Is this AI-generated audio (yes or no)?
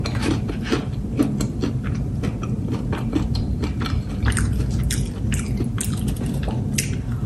no